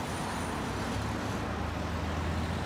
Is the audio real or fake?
real